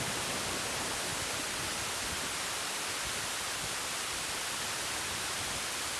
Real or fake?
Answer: real